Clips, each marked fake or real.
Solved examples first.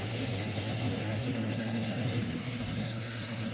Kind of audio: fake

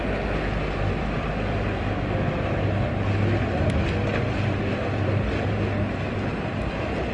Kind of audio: real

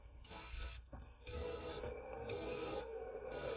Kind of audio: fake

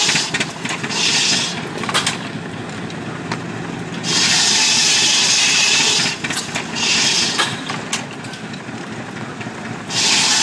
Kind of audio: real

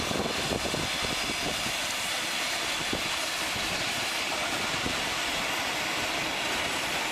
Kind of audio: real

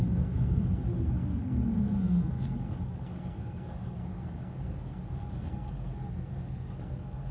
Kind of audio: fake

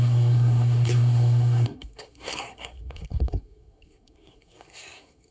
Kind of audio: fake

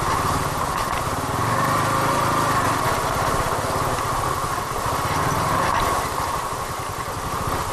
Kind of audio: real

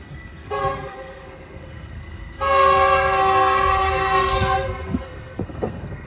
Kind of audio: fake